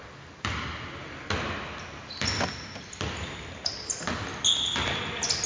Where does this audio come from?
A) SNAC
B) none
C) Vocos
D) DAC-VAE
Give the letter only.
B